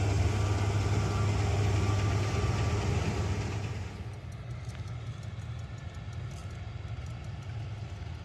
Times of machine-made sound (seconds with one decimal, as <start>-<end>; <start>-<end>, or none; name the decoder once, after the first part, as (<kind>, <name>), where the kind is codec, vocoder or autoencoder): 6.4-7.6 (vocoder, BigVGAN v2)